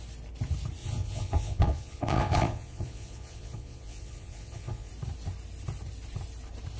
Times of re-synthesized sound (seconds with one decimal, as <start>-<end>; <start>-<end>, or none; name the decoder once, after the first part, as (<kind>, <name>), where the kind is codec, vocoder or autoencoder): 0.8-4.9 (vocoder, Vocos)